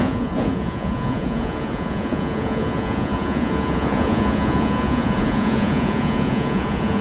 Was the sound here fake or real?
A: fake